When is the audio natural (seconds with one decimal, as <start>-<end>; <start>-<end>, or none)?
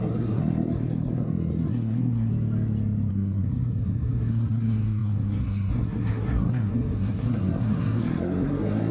2.3-3.1